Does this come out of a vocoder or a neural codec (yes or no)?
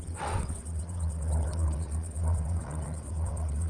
yes